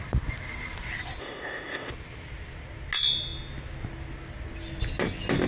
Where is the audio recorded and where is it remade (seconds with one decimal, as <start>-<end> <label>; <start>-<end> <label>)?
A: 0.0-1.2 recorded; 1.2-1.9 remade; 1.9-5.5 recorded